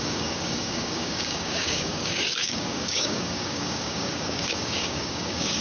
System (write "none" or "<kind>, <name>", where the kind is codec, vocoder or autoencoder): codec, DAC